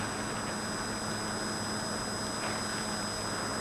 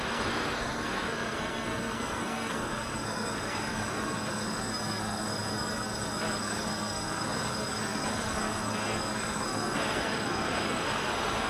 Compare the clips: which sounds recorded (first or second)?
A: first